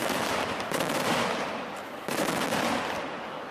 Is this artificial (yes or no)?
no